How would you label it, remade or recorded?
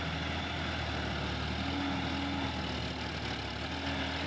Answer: recorded